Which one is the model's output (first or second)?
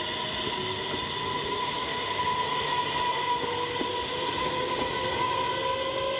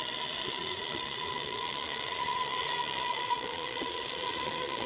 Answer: second